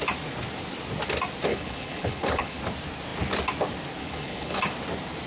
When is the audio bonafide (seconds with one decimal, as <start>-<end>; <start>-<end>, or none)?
0.0-1.5; 2.6-4.0; 4.6-5.3